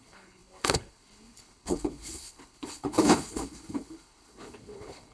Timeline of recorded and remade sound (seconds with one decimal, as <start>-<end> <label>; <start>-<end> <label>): 0.0-5.1 remade